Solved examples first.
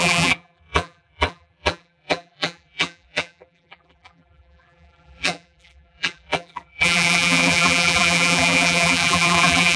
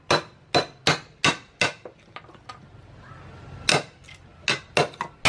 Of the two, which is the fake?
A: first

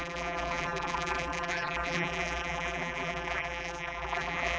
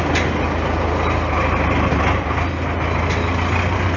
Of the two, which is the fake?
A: first